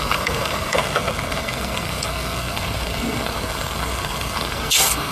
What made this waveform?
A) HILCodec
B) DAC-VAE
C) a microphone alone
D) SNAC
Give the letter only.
D